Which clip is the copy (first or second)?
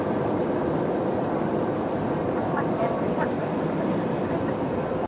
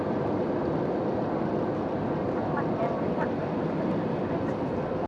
first